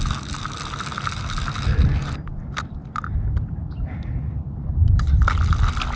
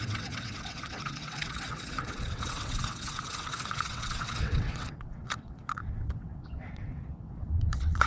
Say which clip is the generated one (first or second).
second